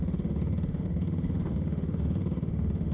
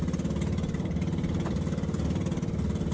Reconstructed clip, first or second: first